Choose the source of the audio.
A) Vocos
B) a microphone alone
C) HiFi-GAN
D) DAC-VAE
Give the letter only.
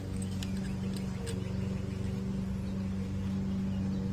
B